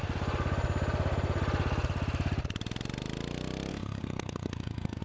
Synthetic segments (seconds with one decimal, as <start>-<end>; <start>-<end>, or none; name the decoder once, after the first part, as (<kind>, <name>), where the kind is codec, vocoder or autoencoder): 3.7-5.0 (codec, SNAC)